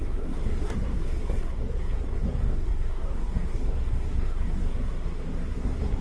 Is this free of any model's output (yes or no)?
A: no